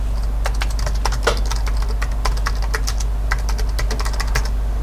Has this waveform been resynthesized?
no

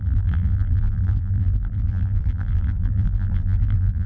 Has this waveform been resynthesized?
yes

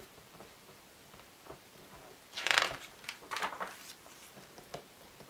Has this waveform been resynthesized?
yes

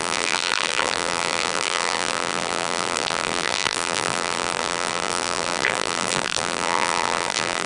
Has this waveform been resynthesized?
yes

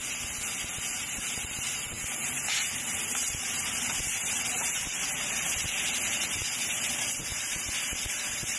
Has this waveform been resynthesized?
yes